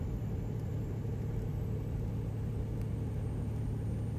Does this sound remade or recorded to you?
recorded